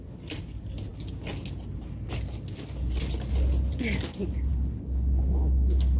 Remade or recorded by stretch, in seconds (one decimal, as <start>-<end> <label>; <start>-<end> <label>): 0.0-6.0 recorded